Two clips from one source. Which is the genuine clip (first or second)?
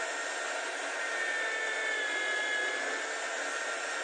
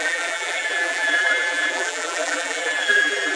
first